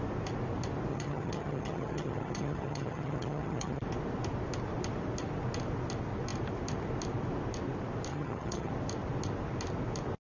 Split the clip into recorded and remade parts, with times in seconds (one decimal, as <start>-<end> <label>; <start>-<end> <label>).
0.0-0.9 recorded; 0.9-3.8 remade; 3.8-8.1 recorded; 8.1-8.7 remade; 8.7-10.2 recorded